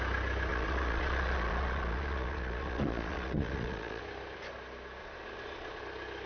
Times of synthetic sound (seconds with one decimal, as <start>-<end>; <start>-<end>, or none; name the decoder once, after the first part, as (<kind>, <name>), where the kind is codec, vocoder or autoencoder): 0.5-4.0 (vocoder, Vocos); 5.0-5.8